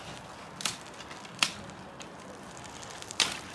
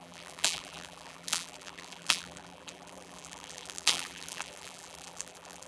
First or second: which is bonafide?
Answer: first